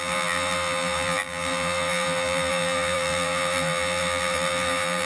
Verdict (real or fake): fake